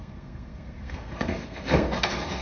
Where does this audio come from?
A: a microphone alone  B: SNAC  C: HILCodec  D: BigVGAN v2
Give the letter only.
B